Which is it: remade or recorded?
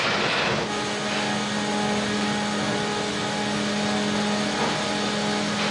recorded